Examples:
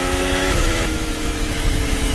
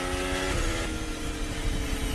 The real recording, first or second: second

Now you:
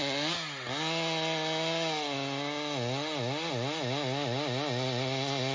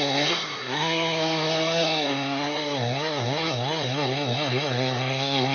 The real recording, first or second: first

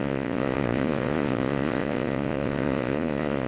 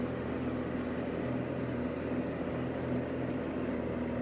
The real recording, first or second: second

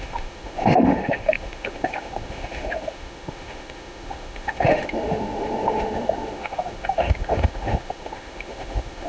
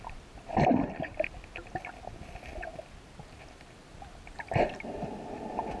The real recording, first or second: second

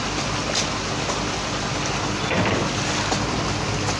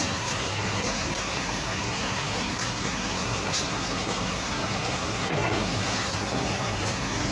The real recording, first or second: first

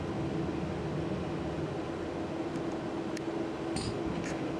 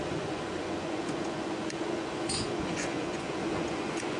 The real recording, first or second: first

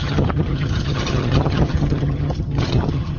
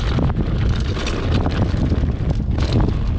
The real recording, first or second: second